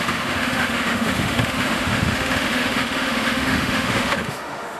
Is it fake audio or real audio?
fake